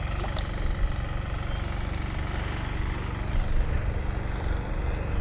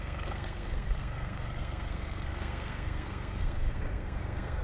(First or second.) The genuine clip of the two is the first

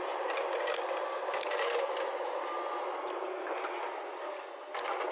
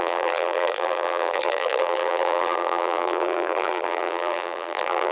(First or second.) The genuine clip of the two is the first